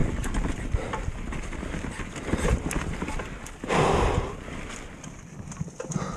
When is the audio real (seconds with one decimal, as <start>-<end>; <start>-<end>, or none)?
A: 0.0-2.5; 5.6-6.2